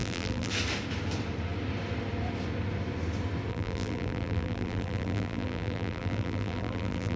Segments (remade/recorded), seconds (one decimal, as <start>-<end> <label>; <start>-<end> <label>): 0.0-0.5 remade; 0.5-3.5 recorded; 3.5-7.2 remade